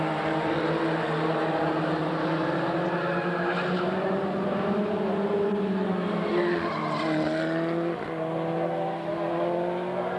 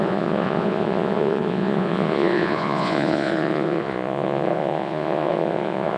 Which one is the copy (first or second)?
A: second